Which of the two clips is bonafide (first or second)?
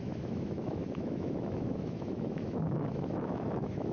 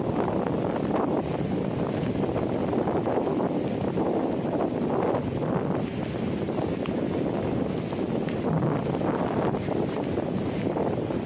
second